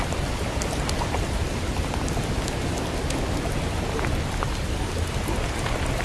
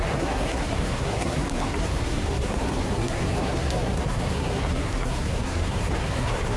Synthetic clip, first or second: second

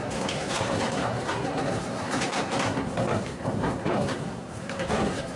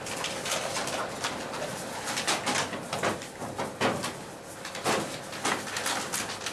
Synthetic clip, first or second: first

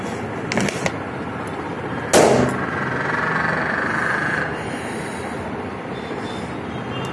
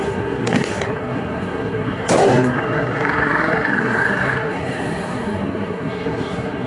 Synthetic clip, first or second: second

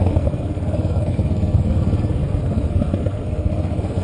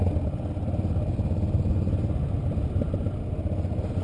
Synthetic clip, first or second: first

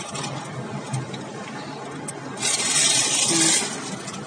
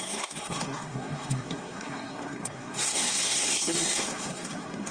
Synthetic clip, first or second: second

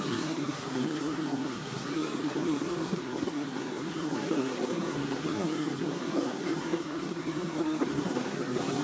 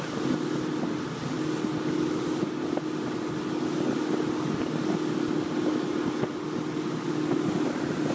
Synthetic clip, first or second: first